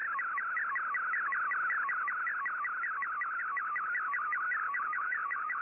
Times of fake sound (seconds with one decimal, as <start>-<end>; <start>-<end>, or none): 4.6-5.6